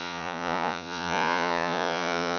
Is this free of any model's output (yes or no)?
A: no